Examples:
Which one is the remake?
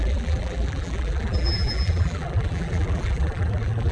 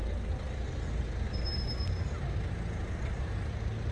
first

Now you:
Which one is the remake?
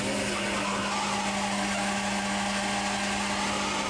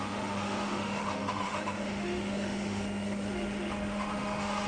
second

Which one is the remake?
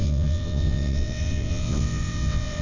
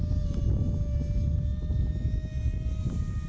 first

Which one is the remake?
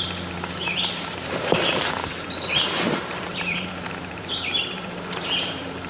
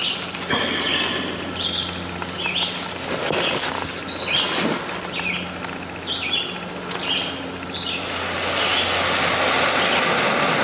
first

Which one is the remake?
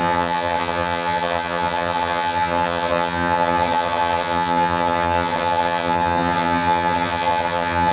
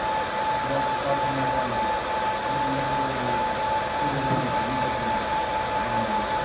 first